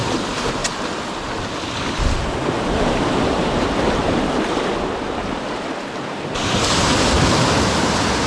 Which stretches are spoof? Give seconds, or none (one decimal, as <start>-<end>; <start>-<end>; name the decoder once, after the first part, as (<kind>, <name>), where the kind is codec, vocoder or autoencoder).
0.0-0.6 (vocoder, BigVGAN v2); 2.8-4.0; 6.3-6.9; 7.8-8.3